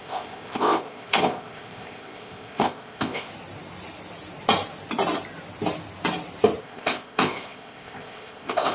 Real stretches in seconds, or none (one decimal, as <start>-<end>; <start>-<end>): 3.3-6.6